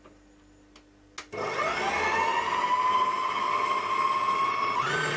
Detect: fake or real real